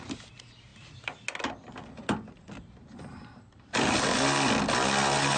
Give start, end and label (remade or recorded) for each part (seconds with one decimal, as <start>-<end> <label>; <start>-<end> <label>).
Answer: 0.0-5.4 recorded